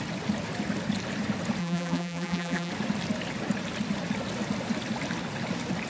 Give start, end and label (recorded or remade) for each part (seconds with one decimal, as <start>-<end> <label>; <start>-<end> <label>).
0.0-1.6 recorded; 1.6-2.7 remade; 2.7-5.9 recorded